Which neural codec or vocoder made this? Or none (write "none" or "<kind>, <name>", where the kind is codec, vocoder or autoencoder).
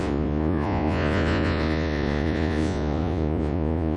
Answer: vocoder, Vocos